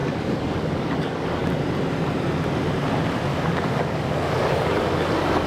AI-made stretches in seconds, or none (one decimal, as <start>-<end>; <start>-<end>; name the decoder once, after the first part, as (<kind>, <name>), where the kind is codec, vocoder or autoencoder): 0.0-1.5 (codec, DAC); 3.3-5.5